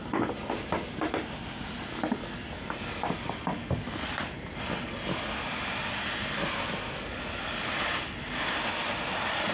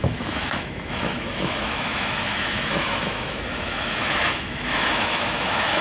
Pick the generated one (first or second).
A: second